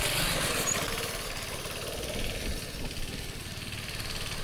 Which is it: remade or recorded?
recorded